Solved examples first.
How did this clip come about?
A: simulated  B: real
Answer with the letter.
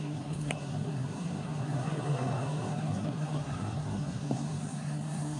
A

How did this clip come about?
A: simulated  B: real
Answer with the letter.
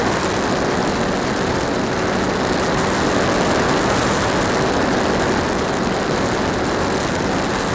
B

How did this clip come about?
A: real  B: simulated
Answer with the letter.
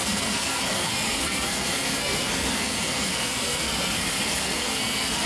B